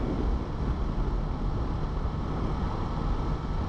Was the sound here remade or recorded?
recorded